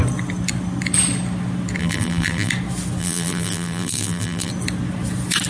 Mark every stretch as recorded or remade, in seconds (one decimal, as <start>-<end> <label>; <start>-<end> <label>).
0.0-1.8 recorded; 1.8-2.5 remade; 2.5-3.0 recorded; 3.0-4.5 remade; 4.5-5.5 recorded